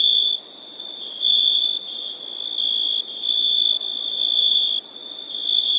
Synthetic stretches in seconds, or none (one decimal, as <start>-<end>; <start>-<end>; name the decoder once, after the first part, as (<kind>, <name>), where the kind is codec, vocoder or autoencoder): none